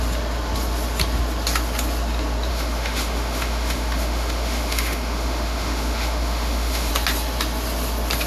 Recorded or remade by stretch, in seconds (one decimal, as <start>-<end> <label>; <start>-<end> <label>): 0.0-2.5 recorded; 2.5-6.9 remade; 6.9-8.3 recorded